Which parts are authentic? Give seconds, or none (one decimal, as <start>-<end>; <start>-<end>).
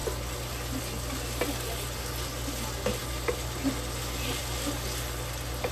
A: 0.0-5.7